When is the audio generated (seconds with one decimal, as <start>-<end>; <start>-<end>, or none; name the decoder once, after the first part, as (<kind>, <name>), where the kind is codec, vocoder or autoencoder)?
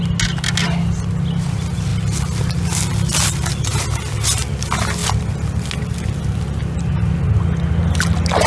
none